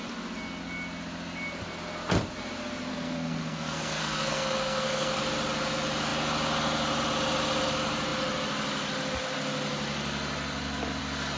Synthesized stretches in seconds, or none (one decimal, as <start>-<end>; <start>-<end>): 2.9-5.2